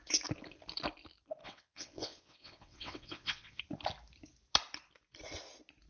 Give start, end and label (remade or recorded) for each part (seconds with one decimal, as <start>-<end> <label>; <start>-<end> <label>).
0.0-1.4 recorded; 1.4-3.6 remade; 3.6-5.9 recorded